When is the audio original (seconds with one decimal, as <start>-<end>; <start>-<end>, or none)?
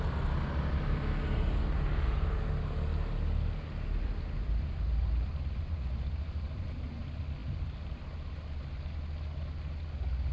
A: 0.0-7.4; 8.0-10.3